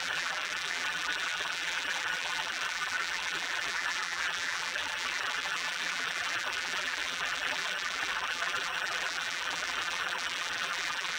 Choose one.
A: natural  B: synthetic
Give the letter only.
B